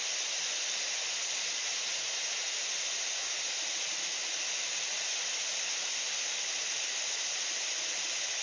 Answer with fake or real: real